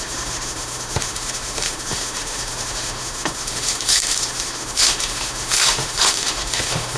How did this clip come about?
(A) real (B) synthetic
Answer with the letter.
B